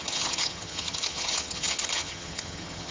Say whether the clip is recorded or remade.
remade